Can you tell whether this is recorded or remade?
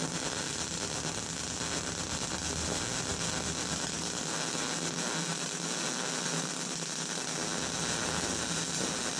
recorded